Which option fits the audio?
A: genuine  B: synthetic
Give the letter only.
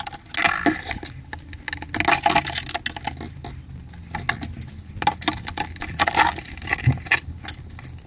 A